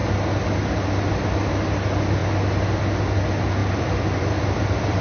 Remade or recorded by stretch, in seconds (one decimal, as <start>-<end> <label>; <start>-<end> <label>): 0.0-3.6 recorded; 3.6-5.0 remade